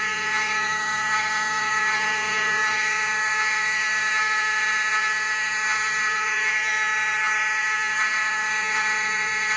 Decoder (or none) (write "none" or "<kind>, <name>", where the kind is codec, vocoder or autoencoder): vocoder, Vocos